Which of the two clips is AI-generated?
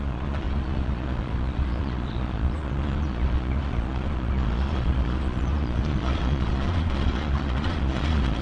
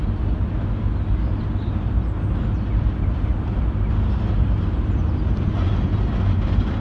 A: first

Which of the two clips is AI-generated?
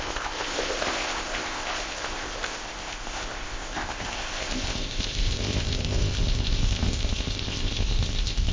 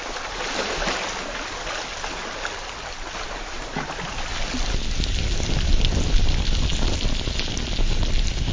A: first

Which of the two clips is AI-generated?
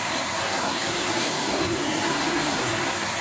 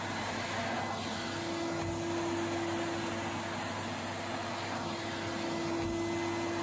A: first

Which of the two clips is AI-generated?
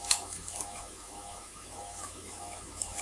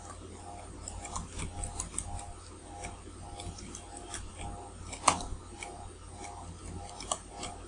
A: first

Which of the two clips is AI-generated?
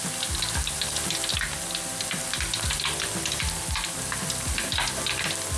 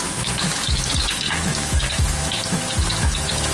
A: second